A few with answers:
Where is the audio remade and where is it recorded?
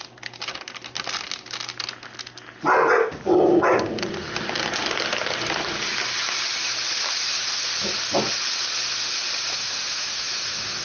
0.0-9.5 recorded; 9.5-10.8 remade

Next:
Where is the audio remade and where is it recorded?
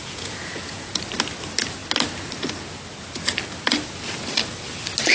0.0-1.0 remade; 1.0-5.1 recorded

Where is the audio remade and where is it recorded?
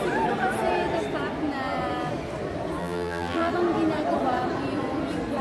0.0-2.8 recorded; 2.8-3.5 remade; 3.5-5.4 recorded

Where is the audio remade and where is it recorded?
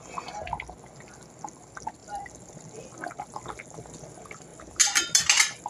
0.0-5.7 recorded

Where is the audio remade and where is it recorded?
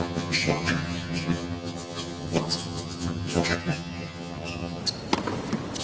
0.0-4.8 remade; 4.8-5.8 recorded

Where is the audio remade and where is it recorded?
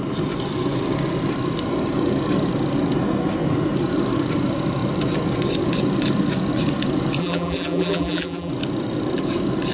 0.0-7.2 recorded; 7.2-8.5 remade; 8.5-9.7 recorded